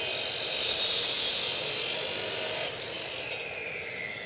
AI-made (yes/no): no